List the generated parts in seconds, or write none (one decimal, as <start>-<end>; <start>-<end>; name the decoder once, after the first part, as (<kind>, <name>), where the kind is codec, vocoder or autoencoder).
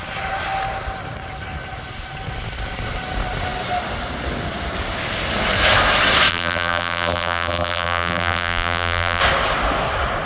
6.3-9.2 (vocoder, BigVGAN v2)